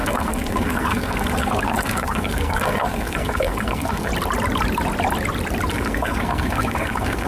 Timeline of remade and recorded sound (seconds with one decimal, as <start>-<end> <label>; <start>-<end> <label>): 0.0-4.1 remade; 4.1-5.7 recorded; 5.7-7.3 remade